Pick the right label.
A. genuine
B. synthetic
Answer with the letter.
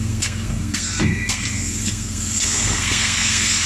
B